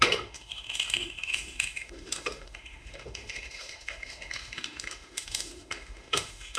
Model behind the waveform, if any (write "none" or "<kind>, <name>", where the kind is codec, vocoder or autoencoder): autoencoder, DAC-VAE